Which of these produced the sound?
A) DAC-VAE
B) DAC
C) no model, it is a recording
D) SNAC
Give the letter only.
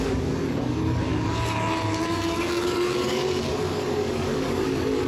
B